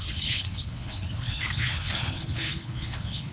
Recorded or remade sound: remade